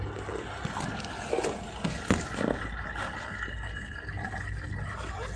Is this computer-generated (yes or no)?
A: no